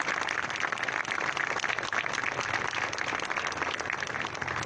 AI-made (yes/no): no